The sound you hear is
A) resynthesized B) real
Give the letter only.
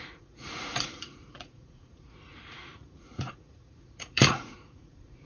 A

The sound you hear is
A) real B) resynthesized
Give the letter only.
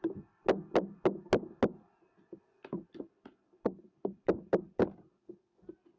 A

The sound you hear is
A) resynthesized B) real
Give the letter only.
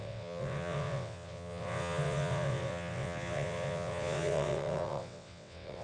A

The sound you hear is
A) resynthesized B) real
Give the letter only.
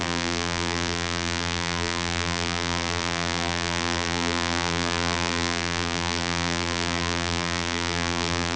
A